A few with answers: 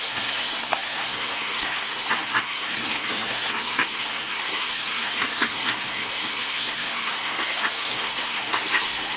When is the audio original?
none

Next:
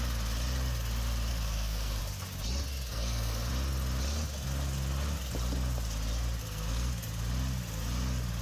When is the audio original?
0.0-1.3; 2.0-2.9; 3.5-6.4; 6.9-8.4

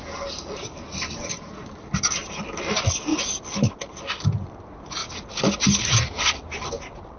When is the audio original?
0.0-7.2

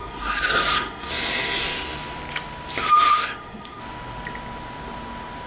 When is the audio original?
1.1-3.1; 3.8-5.5